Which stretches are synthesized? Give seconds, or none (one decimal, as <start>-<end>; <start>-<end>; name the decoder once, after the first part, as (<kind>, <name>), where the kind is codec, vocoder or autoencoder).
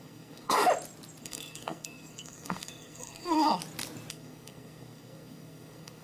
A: 0.0-0.6 (codec, SNAC); 1.2-3.6; 4.1-6.0